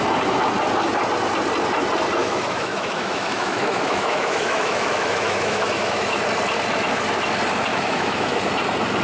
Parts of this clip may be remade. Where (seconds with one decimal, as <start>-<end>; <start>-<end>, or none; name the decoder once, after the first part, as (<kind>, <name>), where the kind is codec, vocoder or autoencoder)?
2.2-6.2 (autoencoder, DAC-VAE); 7.7-8.4